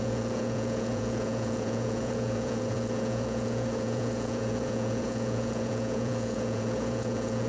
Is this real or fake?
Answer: fake